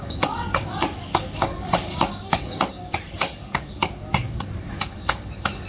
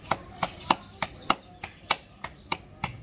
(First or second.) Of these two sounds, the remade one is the first